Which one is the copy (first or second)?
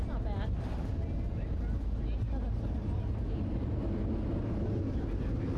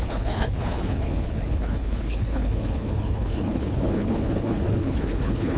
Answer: second